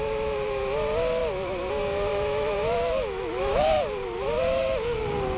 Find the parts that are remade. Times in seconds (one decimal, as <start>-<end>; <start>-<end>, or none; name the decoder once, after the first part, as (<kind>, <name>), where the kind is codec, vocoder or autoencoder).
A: 2.1-3.6 (autoencoder, DAC-VAE)